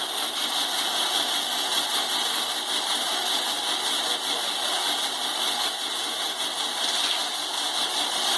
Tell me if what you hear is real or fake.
real